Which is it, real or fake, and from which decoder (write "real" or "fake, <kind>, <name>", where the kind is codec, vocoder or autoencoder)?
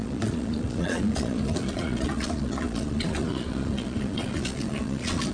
fake, vocoder, Vocos